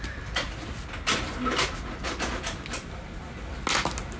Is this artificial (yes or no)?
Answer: no